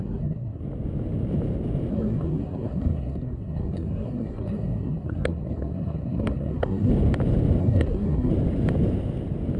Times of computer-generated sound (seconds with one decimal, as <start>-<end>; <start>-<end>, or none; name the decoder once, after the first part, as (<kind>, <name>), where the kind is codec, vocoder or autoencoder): 0.0-0.6 (codec, SNAC); 1.9-6.9; 7.6-8.3